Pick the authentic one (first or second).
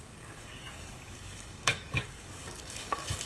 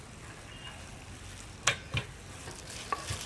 second